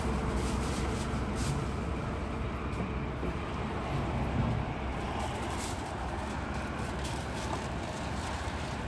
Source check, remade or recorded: recorded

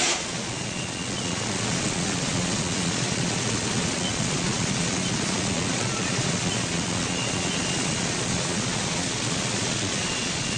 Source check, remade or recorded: remade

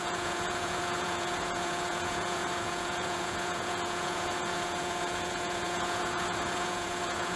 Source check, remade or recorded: remade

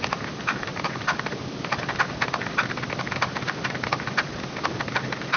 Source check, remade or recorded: recorded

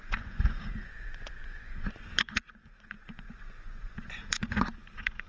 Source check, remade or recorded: remade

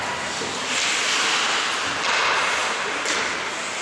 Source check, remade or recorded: recorded